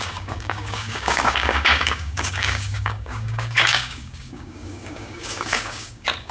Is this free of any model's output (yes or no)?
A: no